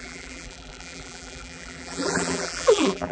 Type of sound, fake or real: fake